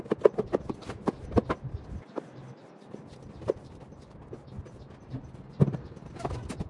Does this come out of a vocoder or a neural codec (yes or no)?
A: no